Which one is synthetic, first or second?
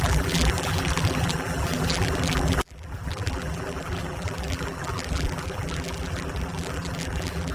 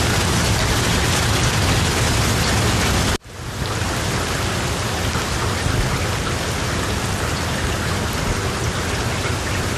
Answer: first